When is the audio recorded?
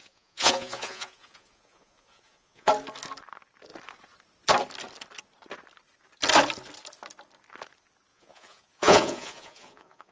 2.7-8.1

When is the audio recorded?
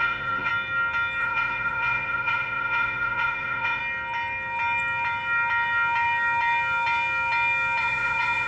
0.5-1.2; 3.8-7.8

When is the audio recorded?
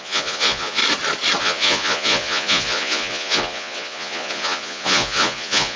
0.8-1.4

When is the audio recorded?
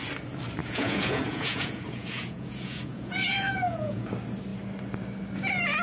0.0-0.6; 4.1-5.8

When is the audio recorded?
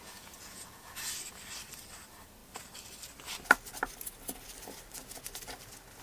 1.0-6.0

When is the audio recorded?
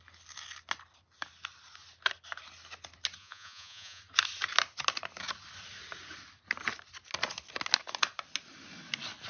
0.0-3.2; 4.0-9.3